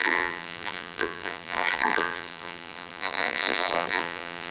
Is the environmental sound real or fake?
fake